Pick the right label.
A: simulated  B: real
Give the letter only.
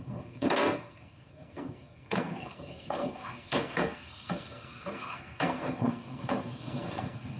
A